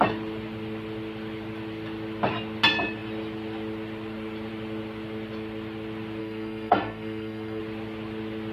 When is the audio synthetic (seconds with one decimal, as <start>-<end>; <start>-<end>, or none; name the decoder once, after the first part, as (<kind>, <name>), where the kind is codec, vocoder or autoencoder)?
6.2-7.6 (codec, SNAC)